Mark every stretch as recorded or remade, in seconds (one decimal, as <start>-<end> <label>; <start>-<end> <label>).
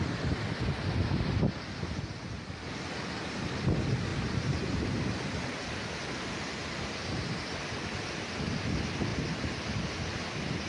0.0-4.1 recorded; 4.1-7.3 remade; 7.3-10.7 recorded